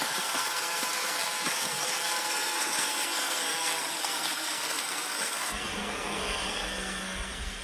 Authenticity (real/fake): fake